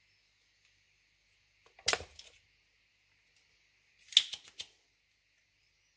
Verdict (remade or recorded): recorded